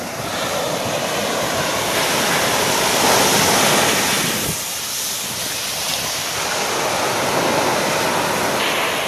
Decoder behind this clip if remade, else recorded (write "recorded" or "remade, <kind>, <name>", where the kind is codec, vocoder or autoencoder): recorded